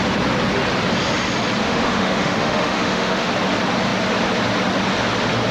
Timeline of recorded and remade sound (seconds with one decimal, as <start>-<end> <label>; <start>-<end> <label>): 0.0-1.6 recorded; 1.6-3.3 remade; 3.3-5.5 recorded